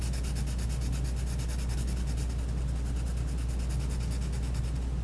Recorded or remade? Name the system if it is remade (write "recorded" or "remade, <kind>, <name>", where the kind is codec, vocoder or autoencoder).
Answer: recorded